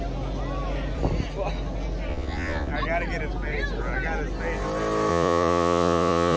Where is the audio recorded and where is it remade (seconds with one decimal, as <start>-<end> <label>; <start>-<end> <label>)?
0.0-2.1 recorded; 2.1-2.7 remade; 2.7-5.1 recorded; 5.1-6.4 remade